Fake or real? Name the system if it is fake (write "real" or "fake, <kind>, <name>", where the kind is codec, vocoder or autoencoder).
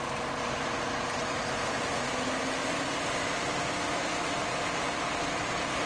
real